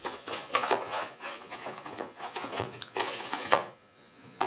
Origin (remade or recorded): remade